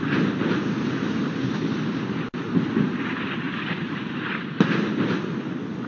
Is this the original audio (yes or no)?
yes